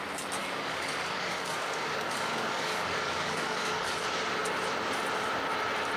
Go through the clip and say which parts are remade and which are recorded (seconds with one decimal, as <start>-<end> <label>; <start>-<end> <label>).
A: 0.0-0.4 recorded; 0.4-4.0 remade; 4.0-6.0 recorded